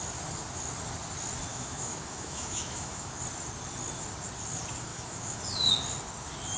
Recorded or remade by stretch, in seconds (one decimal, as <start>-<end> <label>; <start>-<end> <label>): 0.0-1.5 recorded; 1.5-3.2 remade; 3.2-4.9 recorded; 4.9-5.4 remade; 5.4-6.6 recorded